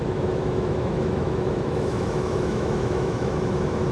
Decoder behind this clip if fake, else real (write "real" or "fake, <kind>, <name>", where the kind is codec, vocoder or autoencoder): fake, autoencoder, DAC-VAE